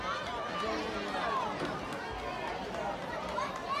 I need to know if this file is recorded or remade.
recorded